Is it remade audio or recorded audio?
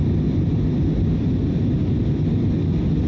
recorded